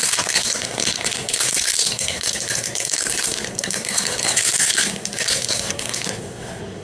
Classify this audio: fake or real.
fake